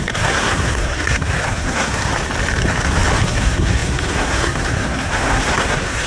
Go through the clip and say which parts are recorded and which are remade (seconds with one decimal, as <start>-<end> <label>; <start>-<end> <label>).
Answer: 0.0-2.1 remade; 2.1-3.2 recorded; 3.2-6.1 remade

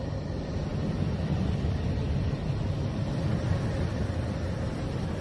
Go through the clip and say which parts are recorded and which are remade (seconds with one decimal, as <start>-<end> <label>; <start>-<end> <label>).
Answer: 0.0-5.2 recorded

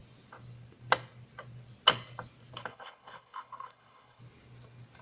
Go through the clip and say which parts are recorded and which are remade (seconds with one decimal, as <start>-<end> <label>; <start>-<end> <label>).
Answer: 0.0-2.7 recorded; 2.7-4.2 remade; 4.2-5.0 recorded

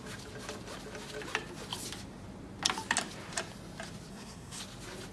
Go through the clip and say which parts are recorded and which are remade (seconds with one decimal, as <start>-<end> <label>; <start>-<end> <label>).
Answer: 0.0-4.1 recorded; 4.1-4.6 remade; 4.6-5.1 recorded

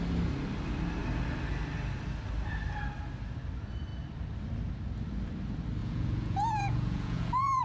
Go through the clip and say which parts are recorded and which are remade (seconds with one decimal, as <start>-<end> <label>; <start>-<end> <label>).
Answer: 0.0-5.8 recorded; 5.8-7.6 remade

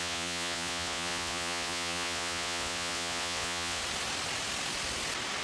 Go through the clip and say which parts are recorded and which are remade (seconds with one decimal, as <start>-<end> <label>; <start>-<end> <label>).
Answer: 0.0-3.8 remade; 3.8-5.4 recorded